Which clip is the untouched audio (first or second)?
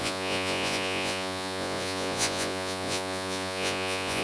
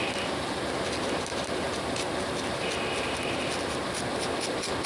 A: second